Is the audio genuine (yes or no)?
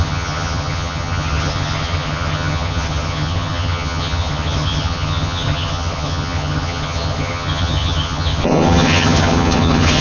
no